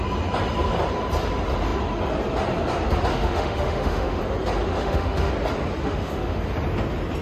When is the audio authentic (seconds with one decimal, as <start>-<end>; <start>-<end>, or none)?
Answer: 0.0-3.1; 4.2-4.7; 5.3-5.8; 6.4-7.2